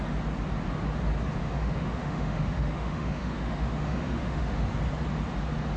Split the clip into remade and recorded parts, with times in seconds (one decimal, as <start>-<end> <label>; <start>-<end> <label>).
0.0-1.4 recorded; 1.4-4.7 remade; 4.7-5.8 recorded